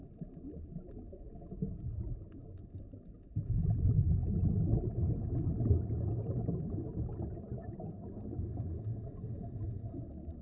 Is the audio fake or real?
real